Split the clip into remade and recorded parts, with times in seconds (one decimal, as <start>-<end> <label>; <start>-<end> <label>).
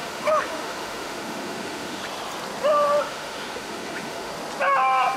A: 0.0-2.0 remade; 2.0-3.0 recorded; 3.0-4.3 remade; 4.3-5.2 recorded